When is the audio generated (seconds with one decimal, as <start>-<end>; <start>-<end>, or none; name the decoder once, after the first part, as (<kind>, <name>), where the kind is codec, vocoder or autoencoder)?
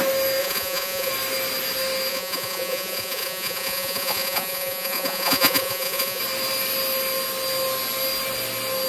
0.4-1.1 (vocoder, Vocos); 2.1-6.2